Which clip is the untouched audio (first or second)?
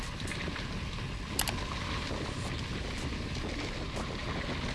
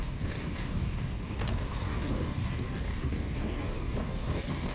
first